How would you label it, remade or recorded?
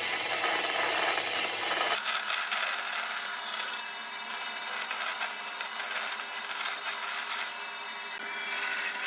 recorded